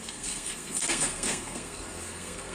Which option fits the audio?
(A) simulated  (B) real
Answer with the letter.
A